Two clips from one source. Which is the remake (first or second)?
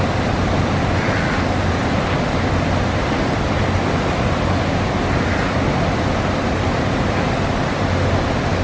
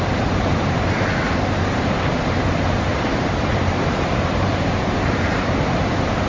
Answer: second